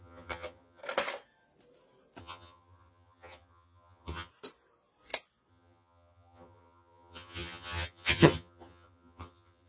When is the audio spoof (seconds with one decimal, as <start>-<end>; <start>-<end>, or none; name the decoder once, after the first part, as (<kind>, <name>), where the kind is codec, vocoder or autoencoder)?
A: 0.0-0.8 (vocoder, HiFi-GAN); 2.2-4.3; 5.5-9.7

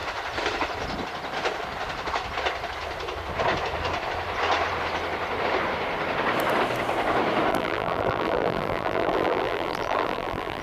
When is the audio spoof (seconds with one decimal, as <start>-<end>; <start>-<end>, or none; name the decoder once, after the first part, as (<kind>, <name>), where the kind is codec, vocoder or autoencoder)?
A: 7.5-10.6 (vocoder, BigVGAN v2)